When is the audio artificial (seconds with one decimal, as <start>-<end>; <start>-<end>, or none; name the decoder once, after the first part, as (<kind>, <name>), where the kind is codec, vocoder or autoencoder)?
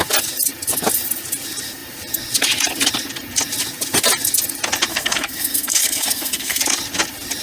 4.9-6.6 (codec, SNAC)